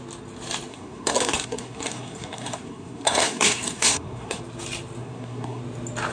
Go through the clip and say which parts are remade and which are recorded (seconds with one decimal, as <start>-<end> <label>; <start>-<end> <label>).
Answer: 0.0-0.7 recorded; 0.7-4.4 remade; 4.4-5.0 recorded; 5.0-5.6 remade; 5.6-6.1 recorded